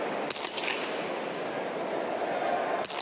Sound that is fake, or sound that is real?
real